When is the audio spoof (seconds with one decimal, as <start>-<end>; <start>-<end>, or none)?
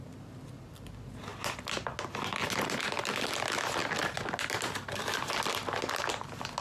none